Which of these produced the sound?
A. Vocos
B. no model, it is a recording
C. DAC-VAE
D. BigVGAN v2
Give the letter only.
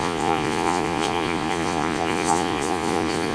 A